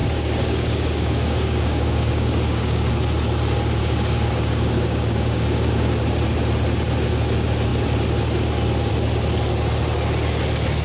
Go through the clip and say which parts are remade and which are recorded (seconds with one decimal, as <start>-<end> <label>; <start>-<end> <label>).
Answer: 0.0-2.9 remade; 2.9-3.8 recorded; 3.8-5.9 remade; 5.9-10.8 recorded